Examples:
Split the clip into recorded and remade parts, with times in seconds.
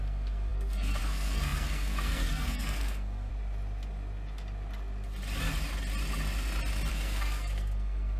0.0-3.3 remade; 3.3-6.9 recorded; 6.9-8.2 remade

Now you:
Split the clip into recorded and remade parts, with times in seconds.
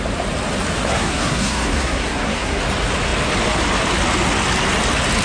0.0-0.9 recorded; 0.9-2.6 remade; 2.6-5.2 recorded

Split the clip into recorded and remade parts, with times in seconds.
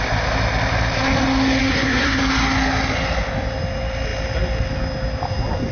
0.0-1.6 recorded; 1.6-2.2 remade; 2.2-5.7 recorded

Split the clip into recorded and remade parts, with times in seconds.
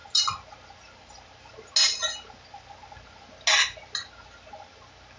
0.0-5.2 recorded